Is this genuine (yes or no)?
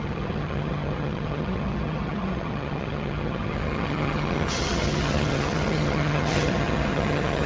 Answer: no